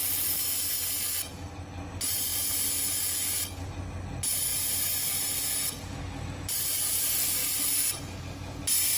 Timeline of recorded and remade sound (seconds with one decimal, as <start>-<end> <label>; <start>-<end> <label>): 0.0-9.0 recorded

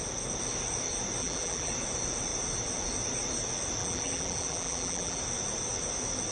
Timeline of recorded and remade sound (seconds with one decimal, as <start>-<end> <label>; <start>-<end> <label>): 0.0-1.2 recorded; 1.2-1.7 remade; 1.7-3.8 recorded; 3.8-5.2 remade; 5.2-6.3 recorded

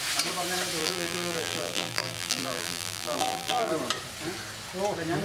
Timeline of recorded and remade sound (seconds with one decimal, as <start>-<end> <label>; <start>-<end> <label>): 0.0-0.8 recorded; 0.8-3.7 remade; 3.7-5.2 recorded

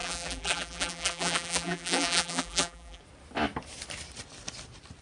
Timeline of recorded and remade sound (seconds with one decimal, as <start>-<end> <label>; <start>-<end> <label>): 0.0-3.0 remade; 3.0-5.0 recorded

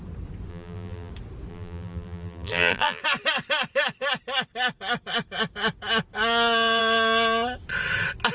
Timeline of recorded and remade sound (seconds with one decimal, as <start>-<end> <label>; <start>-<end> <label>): 0.0-0.5 recorded; 0.5-1.1 remade; 1.1-1.5 recorded; 1.5-3.0 remade; 3.0-8.3 recorded

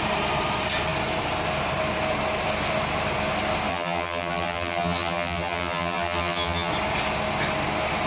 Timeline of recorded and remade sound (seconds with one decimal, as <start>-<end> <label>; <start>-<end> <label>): 0.0-3.7 recorded; 3.7-6.7 remade; 6.7-8.1 recorded